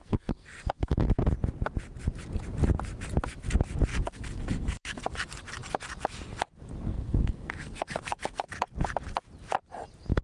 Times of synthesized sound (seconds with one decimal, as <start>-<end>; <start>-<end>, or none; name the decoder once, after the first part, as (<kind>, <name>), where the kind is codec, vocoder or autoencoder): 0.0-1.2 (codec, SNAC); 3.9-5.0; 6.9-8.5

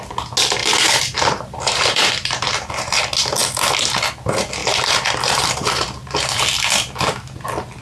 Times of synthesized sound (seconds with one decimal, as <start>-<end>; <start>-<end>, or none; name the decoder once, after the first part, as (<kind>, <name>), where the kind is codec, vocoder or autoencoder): 0.6-3.0 (vocoder, BigVGAN v2); 4.6-6.4

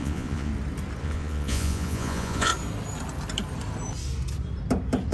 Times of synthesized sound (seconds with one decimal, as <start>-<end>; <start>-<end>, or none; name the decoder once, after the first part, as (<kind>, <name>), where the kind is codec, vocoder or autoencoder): 0.0-0.5 (vocoder, Vocos); 1.0-2.5

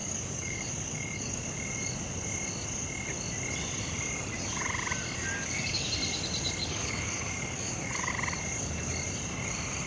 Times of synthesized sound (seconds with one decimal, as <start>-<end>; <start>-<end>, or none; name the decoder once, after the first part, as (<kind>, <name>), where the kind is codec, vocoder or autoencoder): 0.0-1.4 (codec, DAC); 5.3-5.9; 6.6-8.1

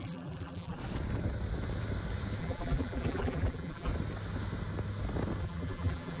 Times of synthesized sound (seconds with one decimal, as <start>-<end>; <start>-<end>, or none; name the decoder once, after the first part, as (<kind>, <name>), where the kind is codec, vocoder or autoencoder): 0.0-0.8 (vocoder, BigVGAN v2); 2.4-3.9; 5.4-6.2

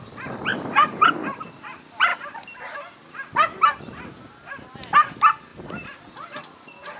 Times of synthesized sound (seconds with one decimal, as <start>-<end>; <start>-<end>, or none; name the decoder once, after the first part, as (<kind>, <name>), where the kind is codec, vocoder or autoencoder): 0.5-1.1 (vocoder, BigVGAN v2); 5.5-6.0

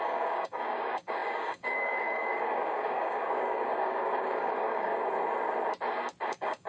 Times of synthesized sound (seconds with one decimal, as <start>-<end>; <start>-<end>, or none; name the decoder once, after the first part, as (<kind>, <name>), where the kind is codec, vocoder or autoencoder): 0.0-4.9 (codec, DAC); 6.3-6.7

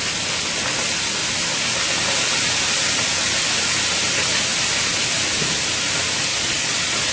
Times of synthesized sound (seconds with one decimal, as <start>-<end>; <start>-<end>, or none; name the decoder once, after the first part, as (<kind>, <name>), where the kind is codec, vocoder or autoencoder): 6.3-7.1 (vocoder, Vocos)